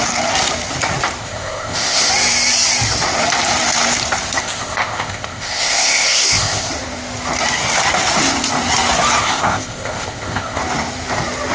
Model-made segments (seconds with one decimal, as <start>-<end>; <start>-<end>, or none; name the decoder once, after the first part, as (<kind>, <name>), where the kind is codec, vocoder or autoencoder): 1.2-2.1 (codec, ZipCodec); 4.4-6.7; 9.2-10.6